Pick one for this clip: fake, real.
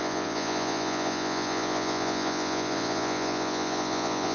fake